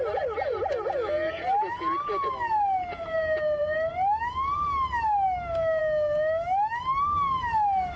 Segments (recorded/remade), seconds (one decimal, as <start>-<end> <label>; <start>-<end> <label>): 0.0-8.0 recorded